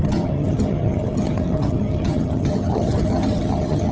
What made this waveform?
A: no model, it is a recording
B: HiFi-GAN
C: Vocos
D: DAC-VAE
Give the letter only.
B